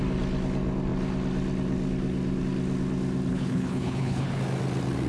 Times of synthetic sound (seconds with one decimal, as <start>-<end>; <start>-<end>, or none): 3.3-4.4